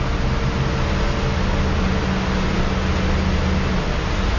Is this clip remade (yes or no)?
no